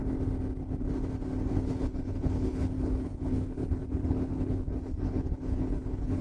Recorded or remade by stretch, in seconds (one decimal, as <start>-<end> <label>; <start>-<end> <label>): 0.0-1.5 recorded; 1.5-6.2 remade